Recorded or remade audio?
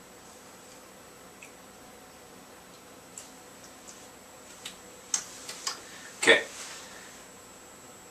recorded